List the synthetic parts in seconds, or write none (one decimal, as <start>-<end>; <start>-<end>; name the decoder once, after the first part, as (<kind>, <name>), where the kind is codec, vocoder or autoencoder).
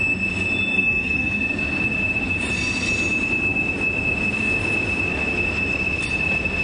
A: 0.7-1.4 (codec, SNAC)